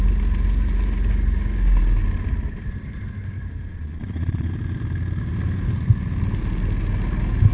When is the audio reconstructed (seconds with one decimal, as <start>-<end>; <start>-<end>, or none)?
3.7-4.5